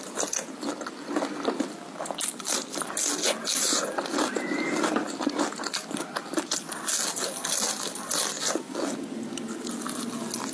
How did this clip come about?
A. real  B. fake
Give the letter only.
A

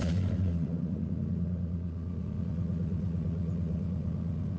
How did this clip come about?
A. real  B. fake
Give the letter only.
B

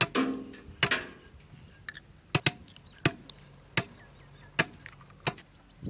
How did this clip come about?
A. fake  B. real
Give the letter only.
B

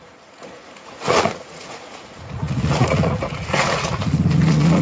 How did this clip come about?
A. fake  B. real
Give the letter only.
A